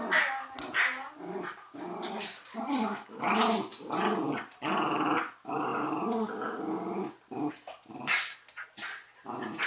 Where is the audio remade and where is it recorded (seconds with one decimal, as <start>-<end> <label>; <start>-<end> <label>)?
0.0-9.7 recorded